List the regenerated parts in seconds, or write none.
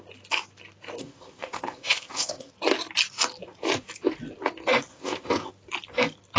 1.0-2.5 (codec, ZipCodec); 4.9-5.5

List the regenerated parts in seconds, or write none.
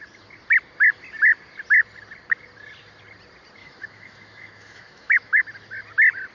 3.6-5.4 (autoencoder, DAC-VAE)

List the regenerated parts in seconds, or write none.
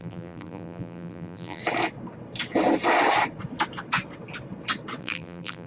0.0-1.6 (vocoder, BigVGAN v2); 5.0-5.7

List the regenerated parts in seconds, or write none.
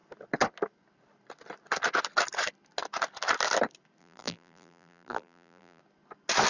4.0-5.8 (vocoder, BigVGAN v2)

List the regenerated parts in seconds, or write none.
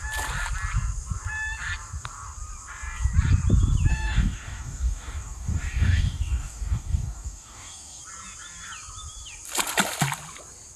3.9-8.0 (codec, DAC)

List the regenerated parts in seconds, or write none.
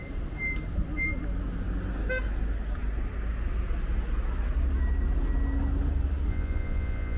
6.3-7.2 (vocoder, Vocos)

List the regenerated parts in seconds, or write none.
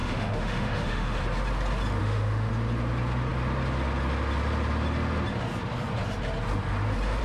0.0-1.2 (autoencoder, DAC-VAE); 2.0-2.5